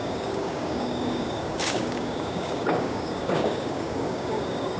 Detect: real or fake fake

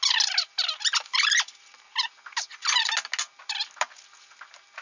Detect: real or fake real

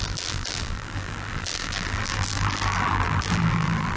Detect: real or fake fake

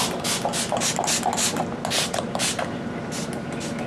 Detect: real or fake real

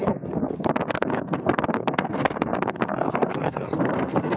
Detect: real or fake fake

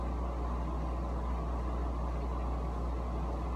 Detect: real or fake real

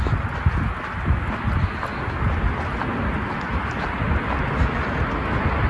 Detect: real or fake real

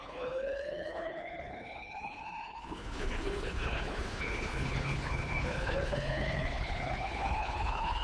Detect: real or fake fake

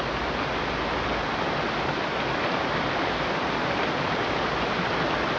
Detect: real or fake real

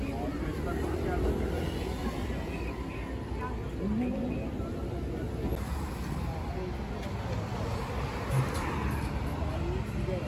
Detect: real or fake real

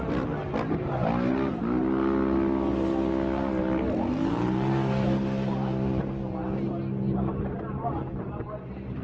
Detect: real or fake real